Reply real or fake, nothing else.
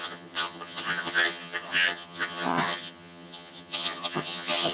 fake